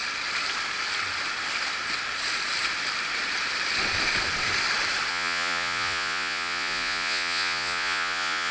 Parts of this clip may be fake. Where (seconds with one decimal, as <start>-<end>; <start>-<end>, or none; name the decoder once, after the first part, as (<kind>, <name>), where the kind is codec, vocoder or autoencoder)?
5.1-8.5 (vocoder, Vocos)